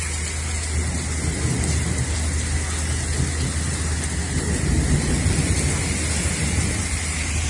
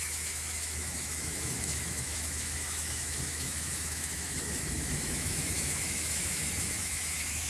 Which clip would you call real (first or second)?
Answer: first